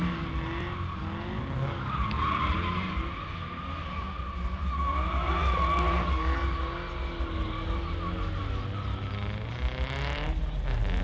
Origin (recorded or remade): recorded